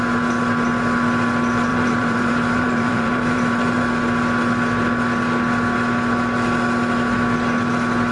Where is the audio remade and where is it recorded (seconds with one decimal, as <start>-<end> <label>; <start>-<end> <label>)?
0.0-1.7 recorded; 1.7-3.8 remade; 3.8-8.1 recorded